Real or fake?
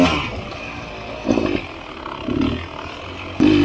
real